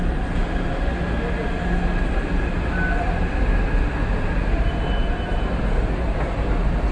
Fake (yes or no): no